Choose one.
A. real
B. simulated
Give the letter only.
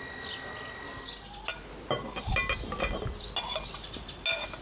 A